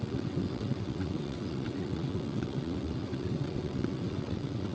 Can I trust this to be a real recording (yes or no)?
no